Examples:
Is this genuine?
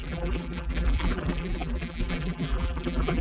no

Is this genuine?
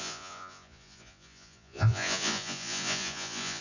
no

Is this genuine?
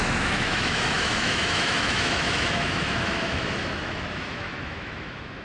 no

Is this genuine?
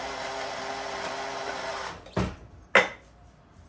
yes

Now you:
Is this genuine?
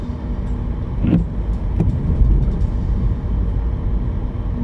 yes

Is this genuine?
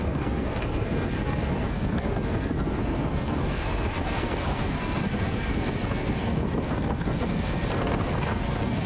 no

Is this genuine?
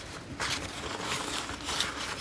yes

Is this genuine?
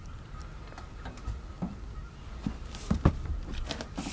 yes